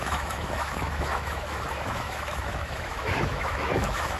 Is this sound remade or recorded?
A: remade